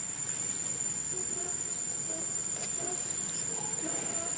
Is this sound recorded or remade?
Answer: recorded